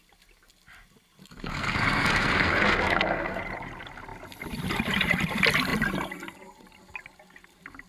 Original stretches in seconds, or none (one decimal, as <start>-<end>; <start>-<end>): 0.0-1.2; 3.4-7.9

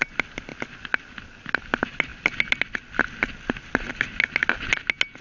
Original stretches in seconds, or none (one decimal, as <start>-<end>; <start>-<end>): 0.0-5.2

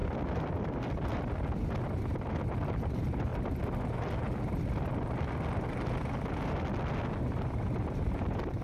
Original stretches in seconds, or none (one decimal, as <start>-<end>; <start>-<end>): 0.0-2.4; 3.3-7.2

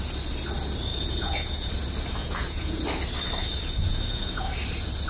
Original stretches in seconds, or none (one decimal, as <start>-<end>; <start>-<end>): 0.0-0.9; 1.7-2.2; 2.8-3.4; 4.4-5.1

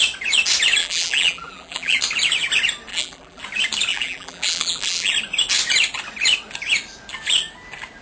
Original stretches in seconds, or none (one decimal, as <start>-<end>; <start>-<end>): 0.0-0.8; 2.0-2.9; 3.4-3.9; 5.1-8.0

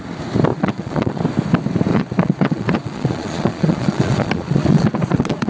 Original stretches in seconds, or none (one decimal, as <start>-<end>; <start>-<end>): 0.0-0.5; 1.2-1.9